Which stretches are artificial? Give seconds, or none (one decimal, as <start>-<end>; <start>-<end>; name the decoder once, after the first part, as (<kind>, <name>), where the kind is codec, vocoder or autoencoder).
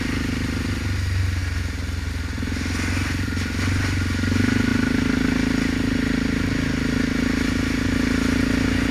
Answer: none